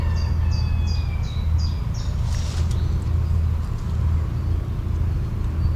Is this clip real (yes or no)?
yes